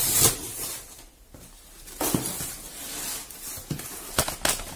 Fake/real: real